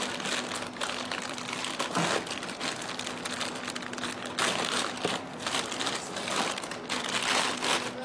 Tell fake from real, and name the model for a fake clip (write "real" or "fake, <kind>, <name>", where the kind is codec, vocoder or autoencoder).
real